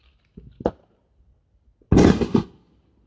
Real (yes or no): yes